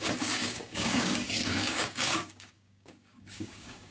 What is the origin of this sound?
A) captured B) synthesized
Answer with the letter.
B